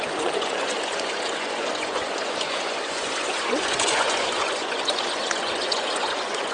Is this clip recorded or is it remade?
remade